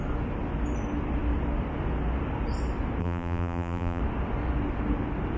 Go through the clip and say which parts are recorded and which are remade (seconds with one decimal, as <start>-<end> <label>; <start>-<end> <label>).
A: 0.0-3.0 recorded; 3.0-4.0 remade; 4.0-5.4 recorded